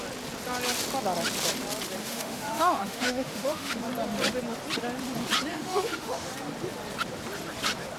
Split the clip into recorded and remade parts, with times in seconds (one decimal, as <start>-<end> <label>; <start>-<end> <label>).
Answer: 0.0-2.0 recorded; 2.0-3.8 remade; 3.8-5.5 recorded; 5.5-6.3 remade; 6.3-8.0 recorded

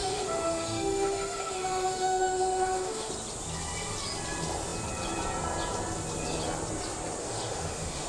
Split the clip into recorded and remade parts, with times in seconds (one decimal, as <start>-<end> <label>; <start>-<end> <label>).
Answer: 0.0-3.1 remade; 3.1-7.2 recorded; 7.2-8.1 remade

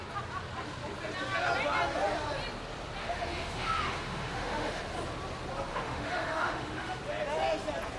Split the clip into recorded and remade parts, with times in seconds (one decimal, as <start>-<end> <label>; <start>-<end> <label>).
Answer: 0.0-3.0 recorded; 3.0-4.8 remade; 4.8-5.7 recorded; 5.7-7.0 remade; 7.0-8.0 recorded

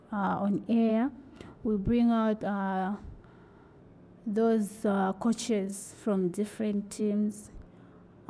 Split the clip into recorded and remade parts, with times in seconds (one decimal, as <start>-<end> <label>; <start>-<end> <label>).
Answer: 0.0-0.9 recorded; 0.9-3.8 remade; 3.8-5.7 recorded; 5.7-7.0 remade; 7.0-8.3 recorded

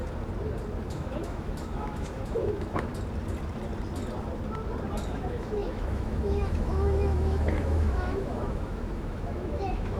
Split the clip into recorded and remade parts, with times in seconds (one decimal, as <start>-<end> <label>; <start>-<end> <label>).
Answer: 0.0-0.9 recorded; 0.9-2.9 remade; 2.9-5.1 recorded; 5.1-10.0 remade

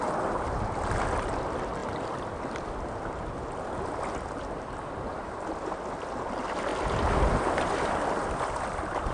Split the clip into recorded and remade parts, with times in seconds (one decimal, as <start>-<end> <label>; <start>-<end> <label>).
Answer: 0.0-9.1 recorded

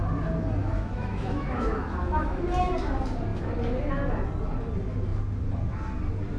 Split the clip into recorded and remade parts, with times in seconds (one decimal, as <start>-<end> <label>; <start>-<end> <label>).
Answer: 0.0-0.6 recorded; 0.6-2.4 remade; 2.4-6.4 recorded

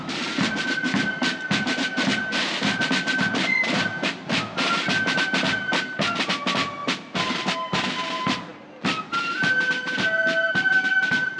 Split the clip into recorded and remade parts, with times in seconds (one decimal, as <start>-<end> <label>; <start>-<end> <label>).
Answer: 0.0-11.4 recorded